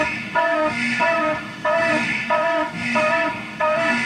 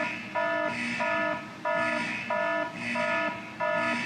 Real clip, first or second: second